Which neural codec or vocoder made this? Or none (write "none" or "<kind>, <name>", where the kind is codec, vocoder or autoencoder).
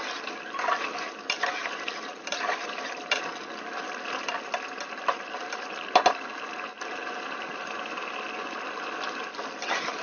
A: none